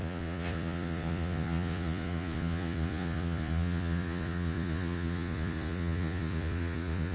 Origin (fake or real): fake